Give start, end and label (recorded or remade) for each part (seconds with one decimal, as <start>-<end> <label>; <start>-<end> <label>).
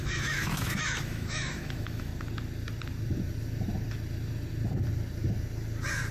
0.0-2.1 remade; 2.1-6.1 recorded